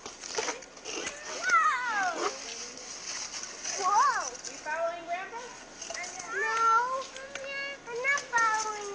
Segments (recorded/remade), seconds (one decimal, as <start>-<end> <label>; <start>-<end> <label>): 0.0-8.9 recorded